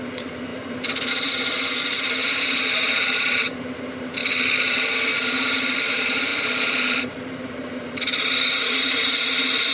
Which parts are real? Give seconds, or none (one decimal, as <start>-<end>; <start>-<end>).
4.2-5.1